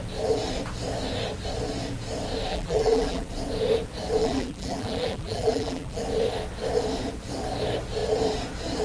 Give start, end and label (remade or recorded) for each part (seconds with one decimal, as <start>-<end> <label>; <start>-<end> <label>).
0.0-2.5 recorded; 2.5-3.3 remade; 3.3-4.2 recorded; 4.2-6.0 remade; 6.0-8.8 recorded